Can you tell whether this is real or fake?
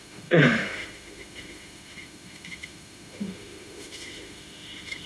fake